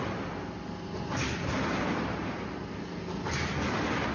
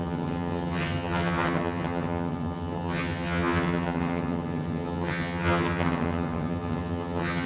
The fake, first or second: second